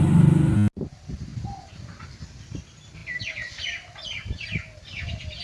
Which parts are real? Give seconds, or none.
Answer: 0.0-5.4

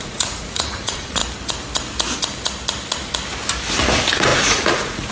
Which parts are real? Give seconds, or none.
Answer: 1.2-3.7